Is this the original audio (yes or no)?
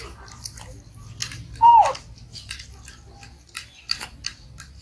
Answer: yes